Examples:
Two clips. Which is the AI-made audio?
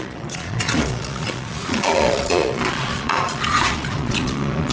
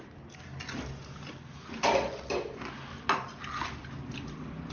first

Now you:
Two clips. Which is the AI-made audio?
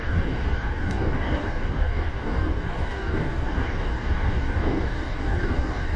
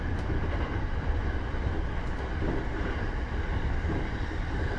first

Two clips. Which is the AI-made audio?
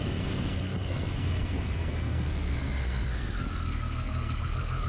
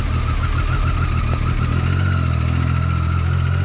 first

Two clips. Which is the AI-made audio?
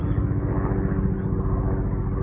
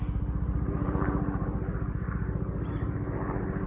second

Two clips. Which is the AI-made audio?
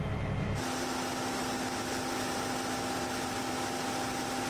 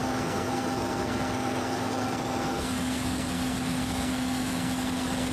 second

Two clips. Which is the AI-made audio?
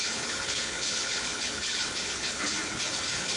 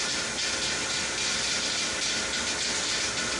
first